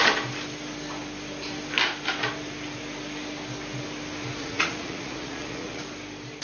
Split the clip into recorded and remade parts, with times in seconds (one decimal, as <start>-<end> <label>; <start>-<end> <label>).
0.0-4.4 recorded; 4.4-5.8 remade; 5.8-6.4 recorded